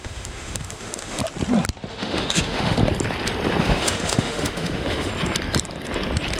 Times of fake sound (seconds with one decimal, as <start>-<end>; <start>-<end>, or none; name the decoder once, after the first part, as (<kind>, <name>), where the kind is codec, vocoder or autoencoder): 0.0-1.2 (autoencoder, DAC-VAE); 1.9-2.8; 3.6-5.1